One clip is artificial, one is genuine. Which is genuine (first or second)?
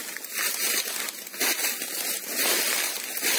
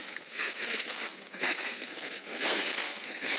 first